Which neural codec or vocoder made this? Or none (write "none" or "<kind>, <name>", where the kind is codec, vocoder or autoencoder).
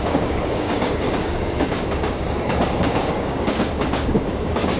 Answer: codec, DAC